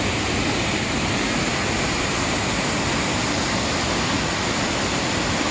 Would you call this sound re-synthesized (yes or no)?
no